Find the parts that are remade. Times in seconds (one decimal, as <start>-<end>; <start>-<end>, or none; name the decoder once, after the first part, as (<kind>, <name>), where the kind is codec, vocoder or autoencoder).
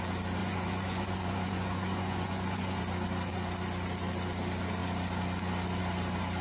0.4-2.8 (vocoder, Vocos)